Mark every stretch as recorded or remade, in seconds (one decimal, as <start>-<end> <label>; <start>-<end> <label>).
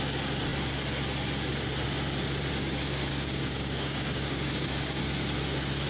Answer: 0.0-3.1 recorded; 3.1-5.0 remade; 5.0-5.9 recorded